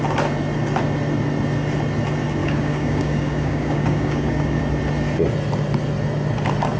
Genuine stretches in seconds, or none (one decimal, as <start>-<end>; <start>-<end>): 0.0-2.4; 4.6-6.8